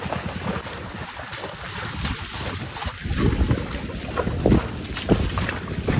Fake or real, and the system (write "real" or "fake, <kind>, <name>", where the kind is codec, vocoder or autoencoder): real